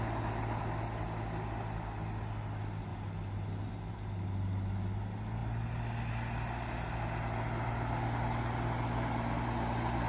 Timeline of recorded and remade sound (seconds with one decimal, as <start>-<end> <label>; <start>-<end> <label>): 0.0-10.1 recorded